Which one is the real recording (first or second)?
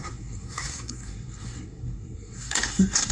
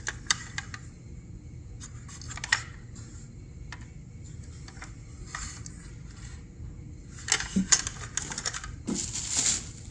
second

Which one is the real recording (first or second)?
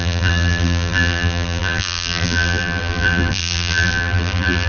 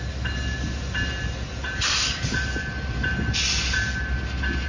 second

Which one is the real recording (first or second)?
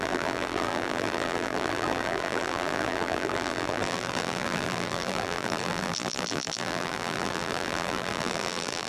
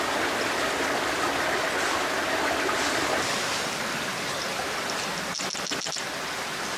second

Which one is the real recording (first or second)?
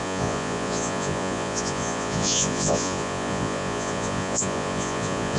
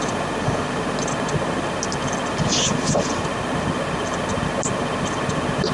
second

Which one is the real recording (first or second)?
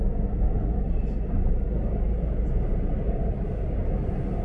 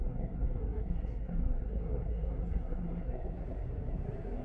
first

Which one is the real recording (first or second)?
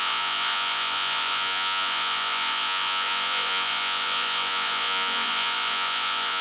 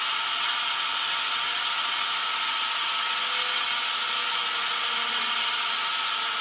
second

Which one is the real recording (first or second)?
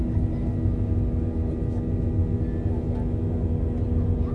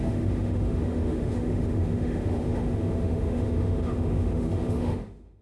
first